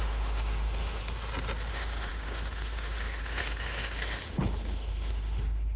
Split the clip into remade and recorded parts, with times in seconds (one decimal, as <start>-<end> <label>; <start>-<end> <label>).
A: 0.0-1.0 remade; 1.0-1.7 recorded; 1.7-5.8 remade